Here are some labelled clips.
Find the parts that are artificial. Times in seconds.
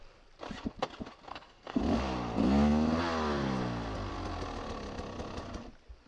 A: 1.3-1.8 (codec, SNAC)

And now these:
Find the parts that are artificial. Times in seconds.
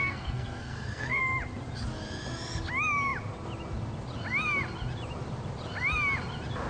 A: 0.0-1.2 (codec, SNAC)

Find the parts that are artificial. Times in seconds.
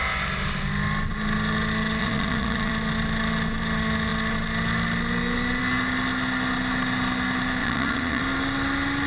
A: 2.0-2.7 (vocoder, Vocos); 7.6-8.2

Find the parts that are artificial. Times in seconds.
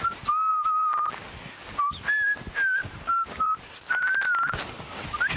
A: 0.5-1.1 (vocoder, BigVGAN v2); 2.8-4.0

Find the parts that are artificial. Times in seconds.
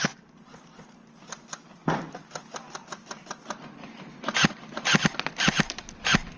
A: none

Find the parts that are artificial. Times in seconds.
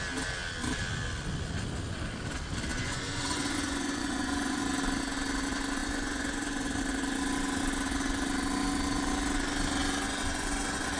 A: 2.7-4.6 (vocoder, Vocos); 5.8-6.8; 9.8-11.0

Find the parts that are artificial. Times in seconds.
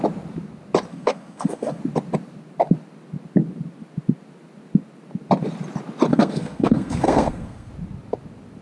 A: 0.9-1.8 (codec, SNAC); 6.1-7.7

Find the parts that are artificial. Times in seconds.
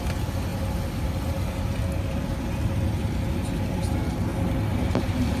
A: 4.7-5.4 (vocoder, BigVGAN v2)